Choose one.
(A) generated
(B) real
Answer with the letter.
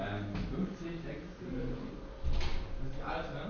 B